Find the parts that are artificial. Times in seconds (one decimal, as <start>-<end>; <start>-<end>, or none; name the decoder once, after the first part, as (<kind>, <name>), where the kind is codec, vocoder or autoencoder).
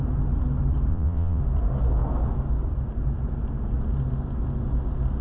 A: 0.9-1.4 (vocoder, WaveNeXt)